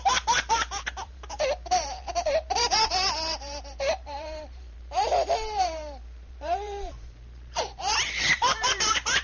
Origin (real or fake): fake